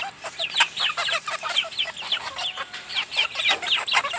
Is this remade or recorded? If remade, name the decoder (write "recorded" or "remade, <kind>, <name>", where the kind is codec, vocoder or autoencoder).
remade, vocoder, BigVGAN v2